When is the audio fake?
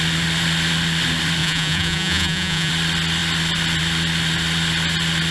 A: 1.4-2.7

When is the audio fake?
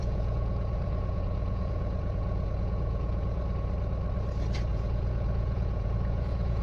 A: 0.0-3.4; 4.7-6.6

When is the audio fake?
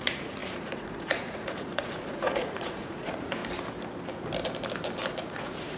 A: 0.0-3.4; 5.1-5.8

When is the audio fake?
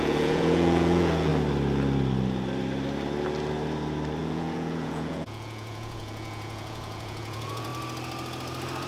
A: 0.0-1.3; 4.2-7.7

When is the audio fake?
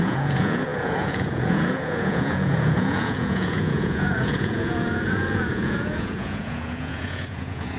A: 0.0-7.8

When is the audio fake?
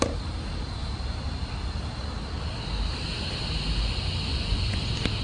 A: 4.3-4.8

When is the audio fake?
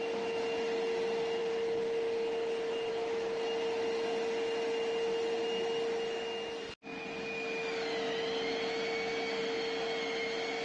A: none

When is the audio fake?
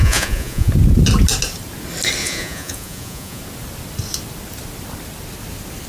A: 0.0-0.7; 2.2-3.4